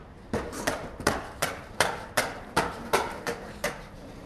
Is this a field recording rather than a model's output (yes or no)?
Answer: no